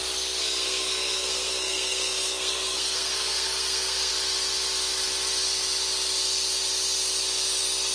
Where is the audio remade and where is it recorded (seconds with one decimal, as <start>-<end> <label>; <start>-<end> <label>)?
0.0-0.4 recorded; 0.4-4.1 remade; 4.1-7.9 recorded